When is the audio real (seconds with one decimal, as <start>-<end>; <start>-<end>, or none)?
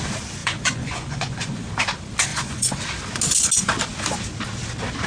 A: 0.0-0.4; 1.7-2.3; 2.8-5.1